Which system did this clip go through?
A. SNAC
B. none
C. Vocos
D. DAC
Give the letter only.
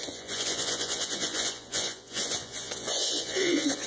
C